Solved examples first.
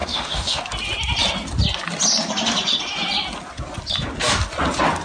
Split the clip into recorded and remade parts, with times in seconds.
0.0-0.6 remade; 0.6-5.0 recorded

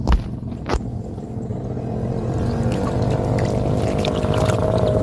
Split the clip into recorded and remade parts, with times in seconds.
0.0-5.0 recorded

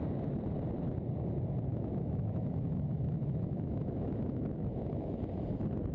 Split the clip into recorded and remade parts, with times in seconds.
0.0-1.7 recorded; 1.7-5.2 remade; 5.2-5.9 recorded

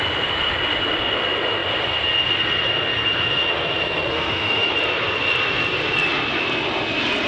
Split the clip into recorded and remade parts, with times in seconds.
0.0-4.1 recorded; 4.1-4.7 remade; 4.7-7.3 recorded

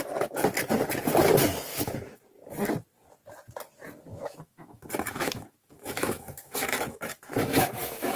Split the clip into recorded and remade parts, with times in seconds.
0.0-1.7 recorded; 1.7-2.2 remade; 2.2-4.1 recorded; 4.1-8.2 remade